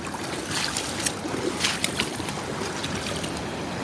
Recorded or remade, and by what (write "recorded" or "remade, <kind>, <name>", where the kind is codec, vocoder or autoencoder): recorded